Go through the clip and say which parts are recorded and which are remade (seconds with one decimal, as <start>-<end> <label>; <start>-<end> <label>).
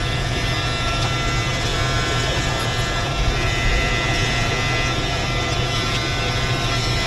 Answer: 0.0-7.1 recorded